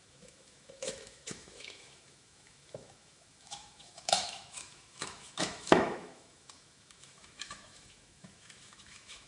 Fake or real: fake